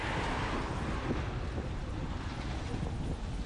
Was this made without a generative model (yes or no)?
yes